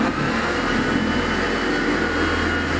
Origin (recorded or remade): recorded